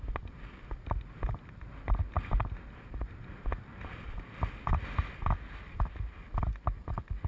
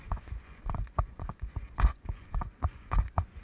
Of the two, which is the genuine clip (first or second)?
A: first